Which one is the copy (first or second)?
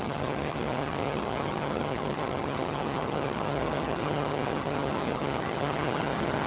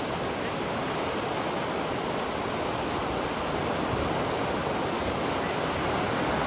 first